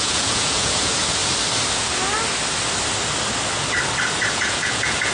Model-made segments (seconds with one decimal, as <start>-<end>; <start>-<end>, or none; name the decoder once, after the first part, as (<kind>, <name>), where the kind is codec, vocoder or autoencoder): 0.0-1.2 (vocoder, Vocos); 4.3-5.1

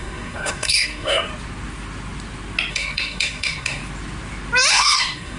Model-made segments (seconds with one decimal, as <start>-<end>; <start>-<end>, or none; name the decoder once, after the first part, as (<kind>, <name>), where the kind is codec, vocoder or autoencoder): 0.0-1.3 (codec, SNAC); 2.7-3.8; 4.7-5.4

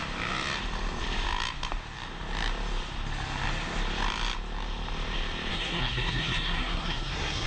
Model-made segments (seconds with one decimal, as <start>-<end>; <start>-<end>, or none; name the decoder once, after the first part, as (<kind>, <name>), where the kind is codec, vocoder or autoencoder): 5.5-7.5 (codec, SNAC)